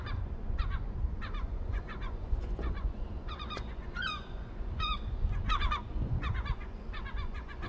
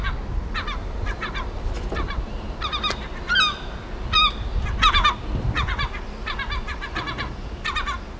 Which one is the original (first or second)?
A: second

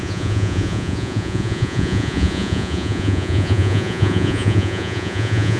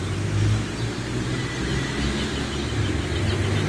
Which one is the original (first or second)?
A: second